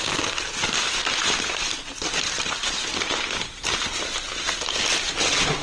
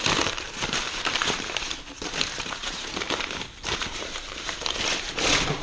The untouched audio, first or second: first